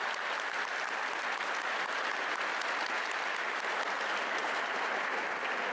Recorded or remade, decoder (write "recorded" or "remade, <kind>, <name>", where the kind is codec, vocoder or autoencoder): recorded